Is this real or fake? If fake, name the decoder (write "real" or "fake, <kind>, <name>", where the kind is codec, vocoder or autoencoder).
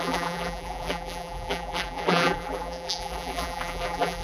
fake, vocoder, BigVGAN v2